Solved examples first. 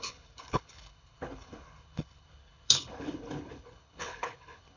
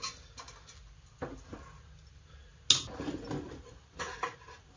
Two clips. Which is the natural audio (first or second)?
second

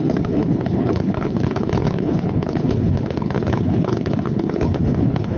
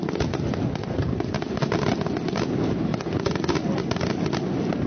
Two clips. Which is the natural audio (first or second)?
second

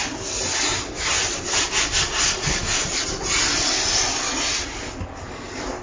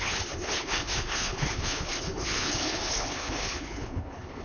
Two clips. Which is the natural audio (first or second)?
first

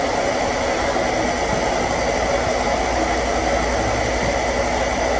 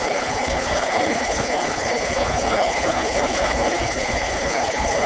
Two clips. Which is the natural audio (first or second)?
first